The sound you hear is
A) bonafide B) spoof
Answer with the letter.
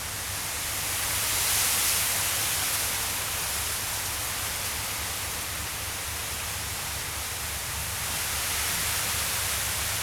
A